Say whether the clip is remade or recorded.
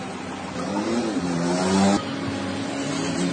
recorded